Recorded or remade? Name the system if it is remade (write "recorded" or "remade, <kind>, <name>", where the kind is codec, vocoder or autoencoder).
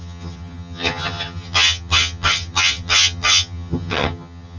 remade, vocoder, HiFi-GAN